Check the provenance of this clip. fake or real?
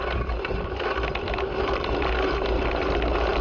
real